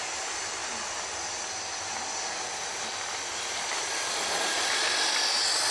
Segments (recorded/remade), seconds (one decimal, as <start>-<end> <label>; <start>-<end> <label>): 0.0-5.7 recorded